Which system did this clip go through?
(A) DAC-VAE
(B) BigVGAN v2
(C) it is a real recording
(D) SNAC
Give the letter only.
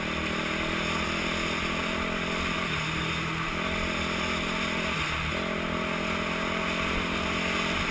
C